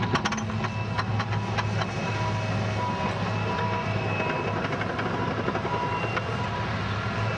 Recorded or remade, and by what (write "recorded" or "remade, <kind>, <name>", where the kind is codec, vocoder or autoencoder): recorded